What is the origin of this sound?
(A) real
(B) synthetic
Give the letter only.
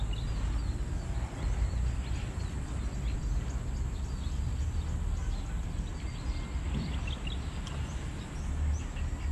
A